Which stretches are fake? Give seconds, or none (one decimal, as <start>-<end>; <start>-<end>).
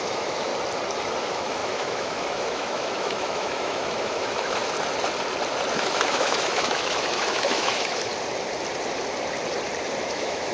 0.0-0.5; 1.2-4.6; 5.7-8.1; 10.0-10.5